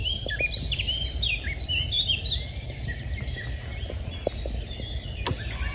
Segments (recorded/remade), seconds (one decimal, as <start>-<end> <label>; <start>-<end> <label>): 0.0-5.7 recorded